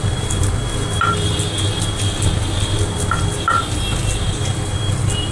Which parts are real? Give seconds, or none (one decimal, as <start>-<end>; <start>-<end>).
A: 0.0-5.3